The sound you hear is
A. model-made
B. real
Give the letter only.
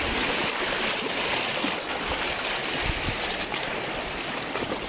B